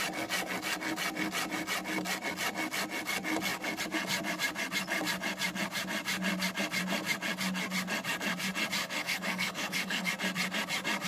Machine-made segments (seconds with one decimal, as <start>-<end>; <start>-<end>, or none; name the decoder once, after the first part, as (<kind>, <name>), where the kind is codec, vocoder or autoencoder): 8.8-10.1 (codec, SNAC)